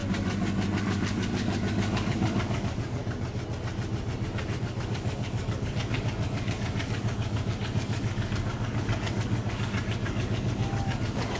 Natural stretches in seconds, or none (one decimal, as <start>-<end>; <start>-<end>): 0.0-0.8; 3.0-4.6